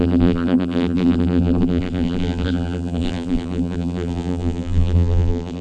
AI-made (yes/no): yes